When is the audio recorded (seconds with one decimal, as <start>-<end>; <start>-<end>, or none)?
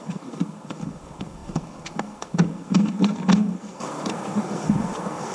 none